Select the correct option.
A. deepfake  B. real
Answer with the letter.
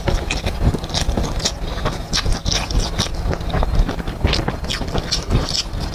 B